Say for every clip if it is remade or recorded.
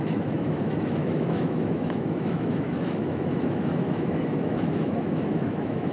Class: remade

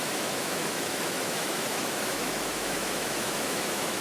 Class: remade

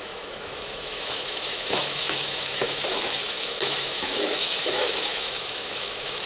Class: remade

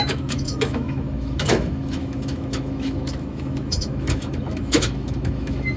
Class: remade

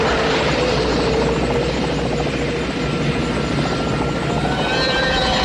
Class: recorded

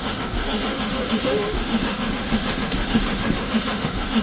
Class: remade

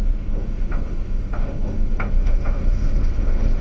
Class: remade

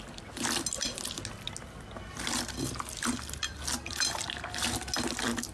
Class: recorded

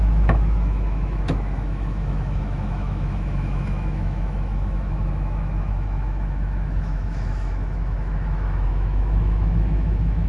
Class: remade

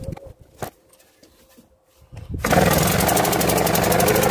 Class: recorded